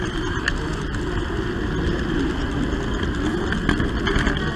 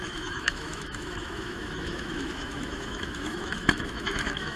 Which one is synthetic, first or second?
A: second